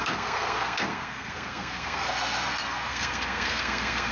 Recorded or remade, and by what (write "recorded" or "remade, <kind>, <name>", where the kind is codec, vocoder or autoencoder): remade, codec, SNAC